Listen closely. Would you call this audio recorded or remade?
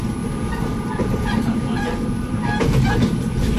recorded